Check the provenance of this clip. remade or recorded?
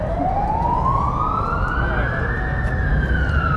recorded